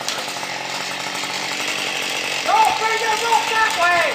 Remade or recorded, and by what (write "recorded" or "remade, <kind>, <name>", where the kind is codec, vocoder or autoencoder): recorded